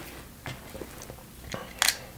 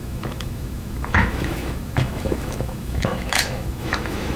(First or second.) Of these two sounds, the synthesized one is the second